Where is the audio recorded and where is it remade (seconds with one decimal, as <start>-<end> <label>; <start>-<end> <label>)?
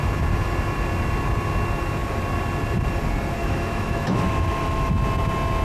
0.0-3.4 recorded; 3.4-4.9 remade; 4.9-5.6 recorded